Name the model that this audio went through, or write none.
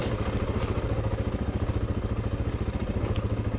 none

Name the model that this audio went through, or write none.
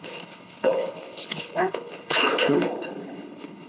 codec, HILCodec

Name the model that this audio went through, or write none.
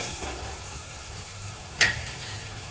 codec, SNAC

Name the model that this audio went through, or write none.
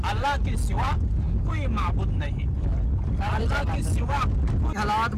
none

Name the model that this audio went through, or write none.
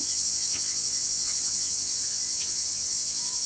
vocoder, WaveNeXt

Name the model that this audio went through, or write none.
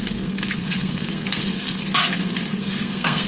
codec, SNAC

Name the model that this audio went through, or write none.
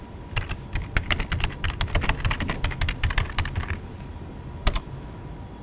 none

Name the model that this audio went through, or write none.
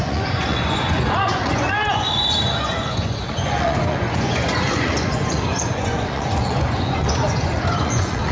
vocoder, Vocos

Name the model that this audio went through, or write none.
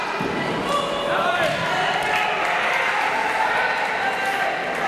none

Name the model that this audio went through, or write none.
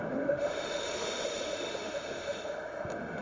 autoencoder, DAC-VAE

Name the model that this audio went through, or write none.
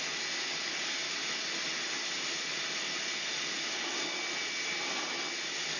none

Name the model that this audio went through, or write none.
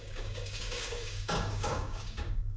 codec, DAC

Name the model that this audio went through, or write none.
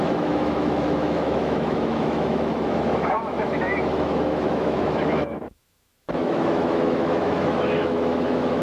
autoencoder, DAC-VAE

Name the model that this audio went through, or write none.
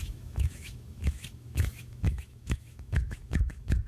autoencoder, DAC-VAE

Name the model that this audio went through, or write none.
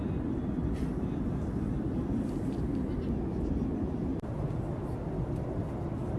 none